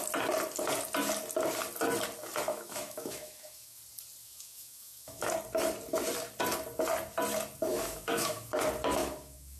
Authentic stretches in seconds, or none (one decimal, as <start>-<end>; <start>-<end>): 0.0-2.5; 3.8-4.2; 5.3-7.7; 8.5-9.0